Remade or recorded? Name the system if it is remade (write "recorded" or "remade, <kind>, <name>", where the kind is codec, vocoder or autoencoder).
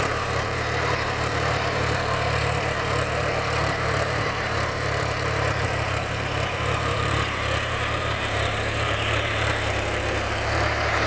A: remade, vocoder, BigVGAN v2